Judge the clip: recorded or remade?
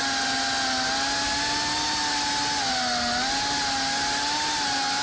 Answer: recorded